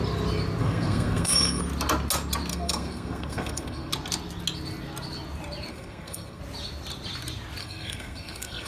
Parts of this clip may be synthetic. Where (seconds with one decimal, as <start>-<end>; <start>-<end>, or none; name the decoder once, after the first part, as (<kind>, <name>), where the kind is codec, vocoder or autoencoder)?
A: 0.6-1.6 (codec, SNAC); 2.5-3.9; 5.7-6.4; 7.6-8.7